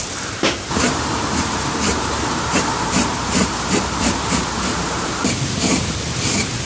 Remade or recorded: remade